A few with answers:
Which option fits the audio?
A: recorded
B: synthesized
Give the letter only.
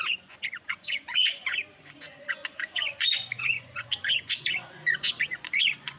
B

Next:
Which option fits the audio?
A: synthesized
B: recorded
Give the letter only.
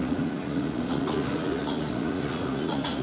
A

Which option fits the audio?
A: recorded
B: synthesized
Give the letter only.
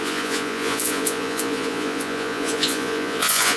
B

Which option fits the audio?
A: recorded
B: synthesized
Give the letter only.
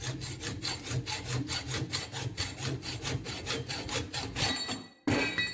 A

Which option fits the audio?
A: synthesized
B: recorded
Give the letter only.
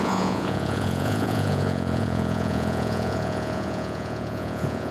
A